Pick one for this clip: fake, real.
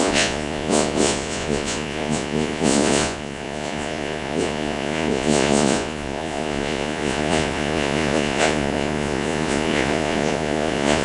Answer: fake